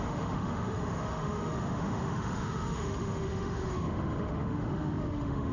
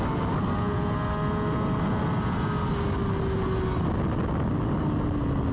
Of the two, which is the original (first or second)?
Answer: second